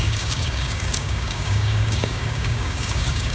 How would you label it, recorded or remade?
remade